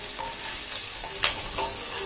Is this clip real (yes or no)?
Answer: no